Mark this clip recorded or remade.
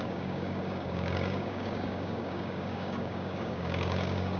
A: remade